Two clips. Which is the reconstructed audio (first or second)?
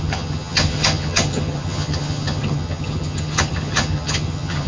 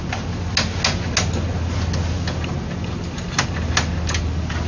first